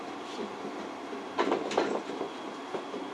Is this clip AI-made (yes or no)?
no